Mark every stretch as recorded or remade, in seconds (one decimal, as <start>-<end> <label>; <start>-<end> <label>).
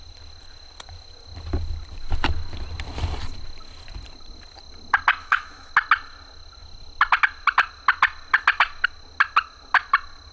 0.0-5.2 recorded; 5.2-5.7 remade; 5.7-10.3 recorded